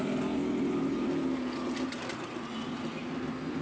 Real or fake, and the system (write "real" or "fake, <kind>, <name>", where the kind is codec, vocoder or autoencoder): real